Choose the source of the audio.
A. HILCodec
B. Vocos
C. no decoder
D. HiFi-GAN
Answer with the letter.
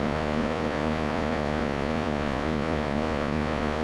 B